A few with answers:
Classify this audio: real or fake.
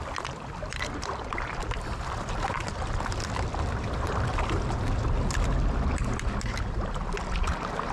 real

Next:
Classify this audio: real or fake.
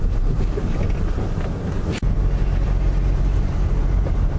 real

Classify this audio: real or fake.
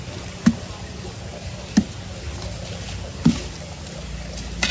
real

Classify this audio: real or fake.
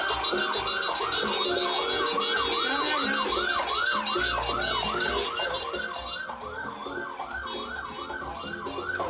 real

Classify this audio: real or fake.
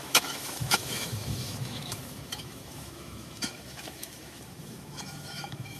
fake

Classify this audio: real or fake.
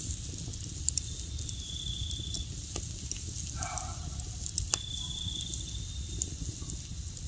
real